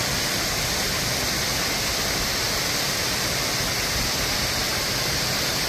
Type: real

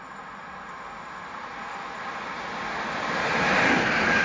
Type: real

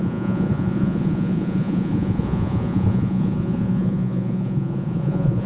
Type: fake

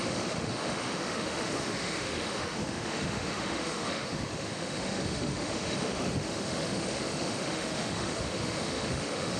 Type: fake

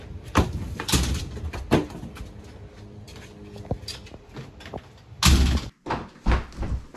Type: real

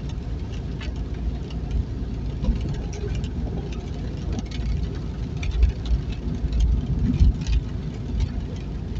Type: real